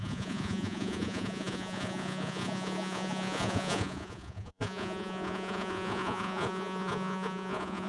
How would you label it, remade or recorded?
remade